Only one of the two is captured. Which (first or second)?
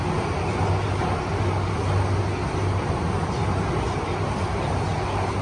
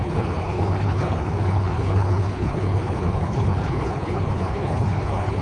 first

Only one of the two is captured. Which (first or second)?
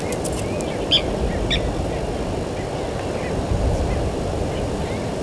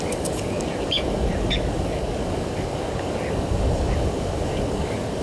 first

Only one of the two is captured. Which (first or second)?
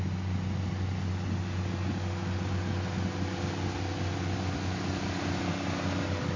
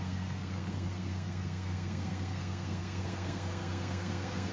first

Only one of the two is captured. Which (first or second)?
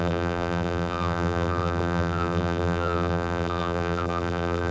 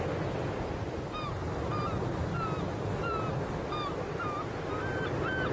second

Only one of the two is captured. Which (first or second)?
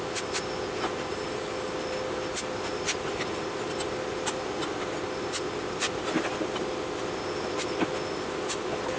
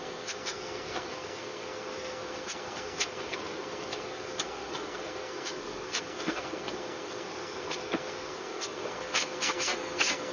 first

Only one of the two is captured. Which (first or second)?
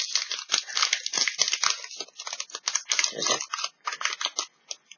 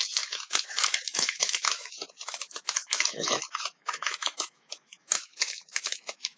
first